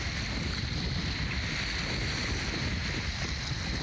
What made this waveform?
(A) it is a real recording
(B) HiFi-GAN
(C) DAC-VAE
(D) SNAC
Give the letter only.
A